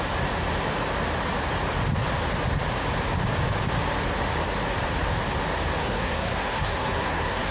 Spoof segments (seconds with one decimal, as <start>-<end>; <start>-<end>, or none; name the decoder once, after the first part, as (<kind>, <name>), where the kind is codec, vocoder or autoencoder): 5.8-7.5 (codec, SNAC)